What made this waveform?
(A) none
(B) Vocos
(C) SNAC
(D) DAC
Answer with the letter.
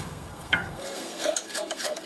C